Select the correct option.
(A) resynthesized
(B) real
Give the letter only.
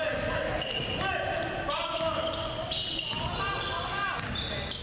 B